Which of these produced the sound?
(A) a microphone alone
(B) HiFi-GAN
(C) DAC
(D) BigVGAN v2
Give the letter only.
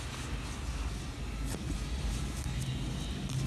A